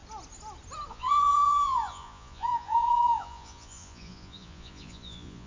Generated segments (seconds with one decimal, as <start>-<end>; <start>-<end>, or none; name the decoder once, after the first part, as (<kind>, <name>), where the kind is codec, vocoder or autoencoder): 0.9-5.5 (vocoder, Vocos)